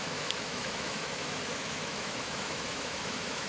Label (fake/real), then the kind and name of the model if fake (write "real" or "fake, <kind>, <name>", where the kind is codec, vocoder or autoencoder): fake, autoencoder, DAC-VAE